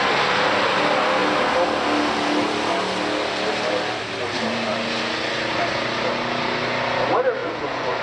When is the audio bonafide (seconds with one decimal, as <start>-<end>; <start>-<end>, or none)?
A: 0.0-7.4